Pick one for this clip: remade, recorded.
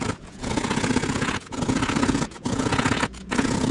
remade